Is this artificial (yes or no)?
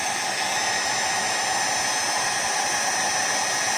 no